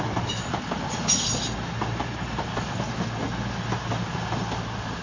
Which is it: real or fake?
real